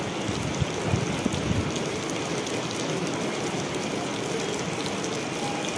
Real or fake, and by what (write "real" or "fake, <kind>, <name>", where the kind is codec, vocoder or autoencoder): real